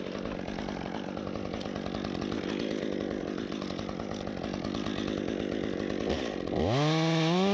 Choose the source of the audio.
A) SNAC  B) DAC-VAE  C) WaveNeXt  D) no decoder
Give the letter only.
D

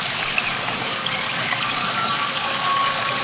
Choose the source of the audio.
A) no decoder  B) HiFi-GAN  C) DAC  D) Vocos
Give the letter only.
C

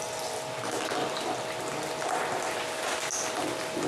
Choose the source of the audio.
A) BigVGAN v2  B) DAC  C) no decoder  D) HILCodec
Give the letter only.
C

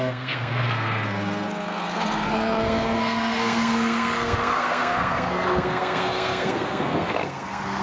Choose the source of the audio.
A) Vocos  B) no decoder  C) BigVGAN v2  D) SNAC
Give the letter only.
D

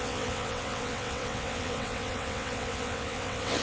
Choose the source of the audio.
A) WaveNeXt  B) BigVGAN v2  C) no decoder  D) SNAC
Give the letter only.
A